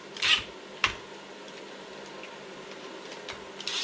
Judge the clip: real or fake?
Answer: real